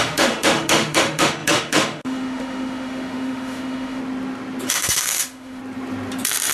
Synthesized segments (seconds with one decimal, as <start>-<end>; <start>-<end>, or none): 0.0-4.0; 4.7-5.6